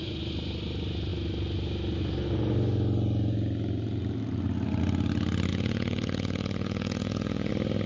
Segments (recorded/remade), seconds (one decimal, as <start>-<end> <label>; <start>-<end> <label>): 0.0-5.5 recorded; 5.5-7.5 remade; 7.5-7.9 recorded